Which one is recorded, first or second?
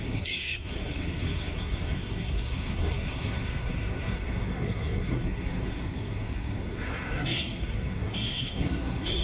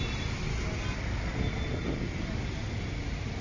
second